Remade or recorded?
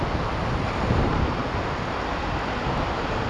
recorded